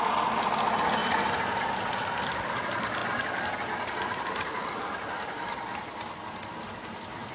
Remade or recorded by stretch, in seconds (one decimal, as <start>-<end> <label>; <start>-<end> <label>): 0.0-7.3 recorded